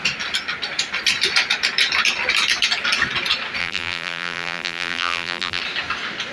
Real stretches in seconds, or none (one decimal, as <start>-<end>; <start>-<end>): 0.0-3.6; 5.6-6.3